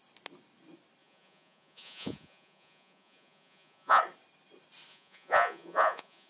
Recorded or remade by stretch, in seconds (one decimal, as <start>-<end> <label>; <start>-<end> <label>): 0.0-1.0 recorded; 1.0-4.0 remade; 4.0-4.9 recorded; 4.9-6.3 remade